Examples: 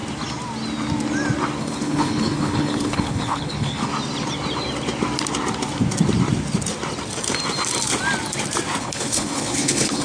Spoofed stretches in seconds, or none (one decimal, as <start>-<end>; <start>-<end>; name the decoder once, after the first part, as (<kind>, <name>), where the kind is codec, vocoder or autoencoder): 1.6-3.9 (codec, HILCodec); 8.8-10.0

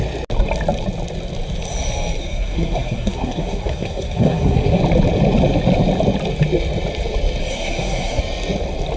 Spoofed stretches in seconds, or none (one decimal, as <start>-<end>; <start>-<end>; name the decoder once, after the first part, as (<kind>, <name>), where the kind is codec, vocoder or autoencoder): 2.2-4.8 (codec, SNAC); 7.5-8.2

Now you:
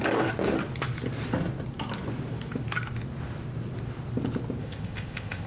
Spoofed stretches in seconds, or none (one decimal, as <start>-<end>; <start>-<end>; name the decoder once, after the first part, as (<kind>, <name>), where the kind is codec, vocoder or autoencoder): 4.6-5.5 (codec, ZipCodec)